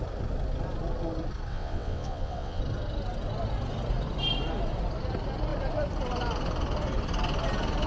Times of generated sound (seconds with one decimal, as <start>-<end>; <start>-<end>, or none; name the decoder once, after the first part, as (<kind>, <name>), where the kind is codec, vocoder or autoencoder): 1.5-2.6 (vocoder, WaveNeXt)